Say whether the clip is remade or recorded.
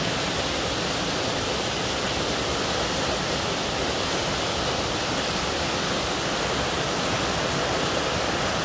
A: recorded